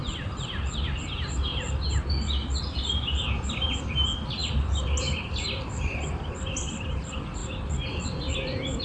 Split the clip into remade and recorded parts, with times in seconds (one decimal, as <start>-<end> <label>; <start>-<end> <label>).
0.0-1.5 remade; 1.5-2.1 recorded; 2.1-4.4 remade; 4.4-5.1 recorded; 5.1-7.4 remade; 7.4-8.3 recorded; 8.3-8.8 remade